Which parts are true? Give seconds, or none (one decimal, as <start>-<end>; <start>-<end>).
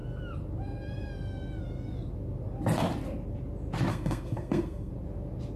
0.0-3.9; 4.9-5.6